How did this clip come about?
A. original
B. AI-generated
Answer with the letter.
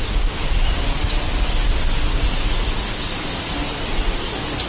A